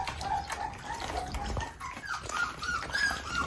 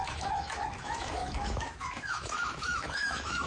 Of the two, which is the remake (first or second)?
second